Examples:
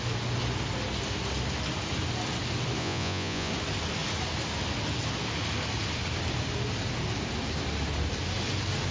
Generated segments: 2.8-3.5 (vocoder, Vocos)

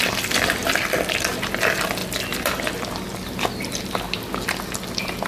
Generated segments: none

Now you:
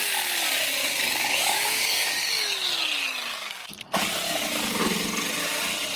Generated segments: 0.8-2.8 (codec, DAC); 3.3-4.8

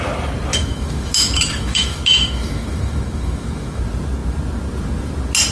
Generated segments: 0.5-3.8 (autoencoder, DAC-VAE)

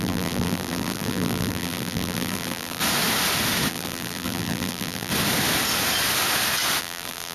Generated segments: 0.0-2.8 (vocoder, BigVGAN v2); 3.7-5.1; 6.8-7.3

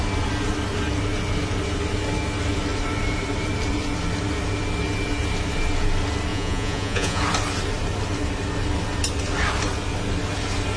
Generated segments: 6.3-7.2 (vocoder, Vocos)

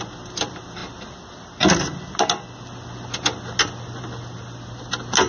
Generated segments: none